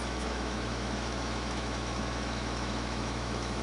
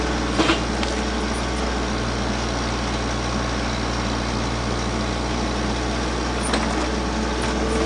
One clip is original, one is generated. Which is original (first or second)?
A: second